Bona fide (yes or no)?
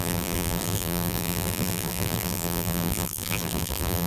no